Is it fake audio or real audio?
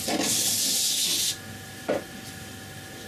real